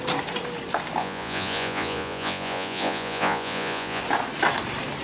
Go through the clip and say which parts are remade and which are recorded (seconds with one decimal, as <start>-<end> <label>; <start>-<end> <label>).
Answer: 0.0-1.0 recorded; 1.0-4.0 remade; 4.0-5.0 recorded